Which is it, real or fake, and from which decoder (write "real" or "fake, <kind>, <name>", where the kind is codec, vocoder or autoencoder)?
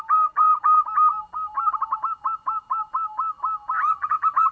real